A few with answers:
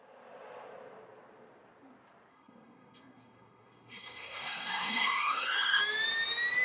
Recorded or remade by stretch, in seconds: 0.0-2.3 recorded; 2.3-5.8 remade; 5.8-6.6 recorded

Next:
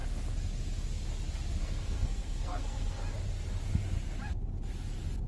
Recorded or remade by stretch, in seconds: 0.0-1.6 recorded; 1.6-3.0 remade; 3.0-5.3 recorded

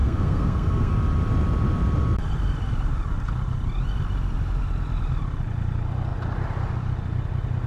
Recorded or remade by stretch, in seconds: 0.0-0.9 remade; 0.9-7.7 recorded

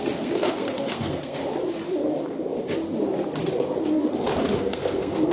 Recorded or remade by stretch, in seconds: 0.0-1.4 remade; 1.4-4.6 recorded; 4.6-5.3 remade